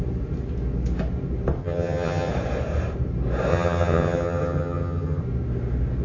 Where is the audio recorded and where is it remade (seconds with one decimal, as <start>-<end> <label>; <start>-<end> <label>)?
0.0-1.6 recorded; 1.6-2.3 remade; 2.3-3.5 recorded; 3.5-5.2 remade; 5.2-6.0 recorded

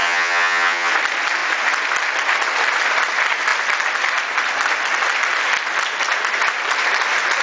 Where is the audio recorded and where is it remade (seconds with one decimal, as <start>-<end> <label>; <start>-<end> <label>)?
0.0-0.9 remade; 0.9-7.4 recorded